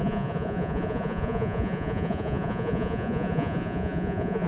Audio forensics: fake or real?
fake